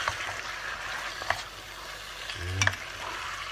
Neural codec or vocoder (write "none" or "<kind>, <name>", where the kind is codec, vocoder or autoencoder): none